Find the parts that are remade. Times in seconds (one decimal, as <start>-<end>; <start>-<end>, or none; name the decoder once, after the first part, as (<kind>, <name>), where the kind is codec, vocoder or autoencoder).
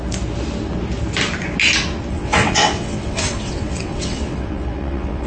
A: 2.1-5.3 (vocoder, WaveNeXt)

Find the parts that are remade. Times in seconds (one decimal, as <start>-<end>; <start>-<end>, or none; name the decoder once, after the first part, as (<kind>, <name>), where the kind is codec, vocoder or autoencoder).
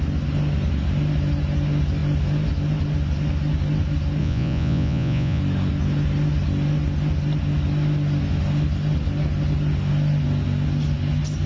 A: 4.2-5.4 (vocoder, Vocos)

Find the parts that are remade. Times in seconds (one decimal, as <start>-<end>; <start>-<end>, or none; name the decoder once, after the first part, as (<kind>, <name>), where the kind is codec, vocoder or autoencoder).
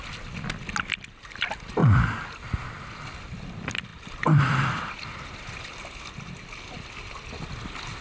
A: 3.9-5.5 (vocoder, BigVGAN v2)